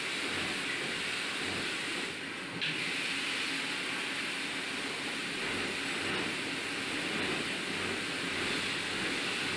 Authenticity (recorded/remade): recorded